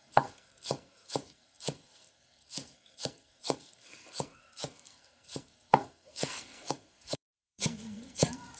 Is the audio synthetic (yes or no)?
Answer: yes